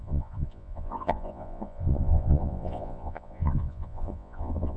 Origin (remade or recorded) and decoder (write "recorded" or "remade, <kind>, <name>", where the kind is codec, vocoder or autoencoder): remade, vocoder, Vocos